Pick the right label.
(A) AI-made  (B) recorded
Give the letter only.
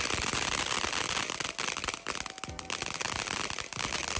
B